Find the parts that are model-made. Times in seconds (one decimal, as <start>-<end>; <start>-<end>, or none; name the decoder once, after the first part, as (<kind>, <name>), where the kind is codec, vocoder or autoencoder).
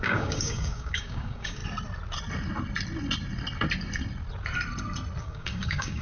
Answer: 0.0-1.6 (codec, DAC); 5.2-6.0